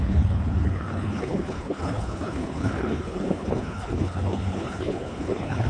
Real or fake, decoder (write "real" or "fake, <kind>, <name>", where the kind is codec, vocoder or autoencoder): fake, codec, HILCodec